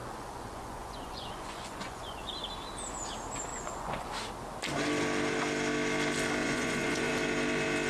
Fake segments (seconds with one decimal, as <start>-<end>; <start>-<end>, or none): 0.0-2.3; 3.5-4.1; 6.4-7.1